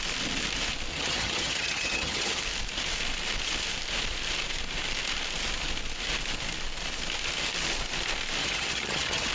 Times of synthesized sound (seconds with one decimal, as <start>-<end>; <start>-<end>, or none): 0.9-2.4; 8.4-9.3